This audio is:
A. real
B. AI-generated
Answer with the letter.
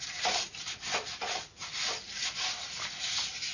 A